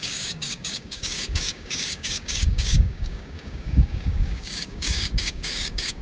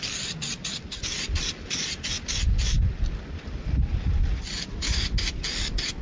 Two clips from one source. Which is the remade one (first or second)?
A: first